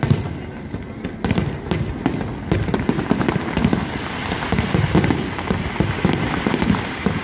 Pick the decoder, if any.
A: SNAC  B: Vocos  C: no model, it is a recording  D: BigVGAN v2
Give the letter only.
C